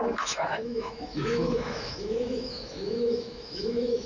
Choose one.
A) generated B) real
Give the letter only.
A